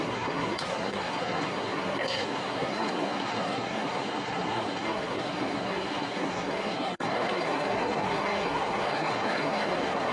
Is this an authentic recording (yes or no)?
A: no